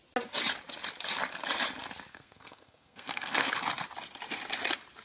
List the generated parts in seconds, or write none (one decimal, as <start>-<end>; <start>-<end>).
2.1-3.5